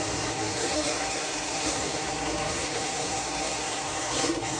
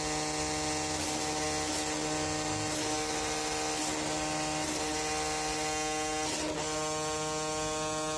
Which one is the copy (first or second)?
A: first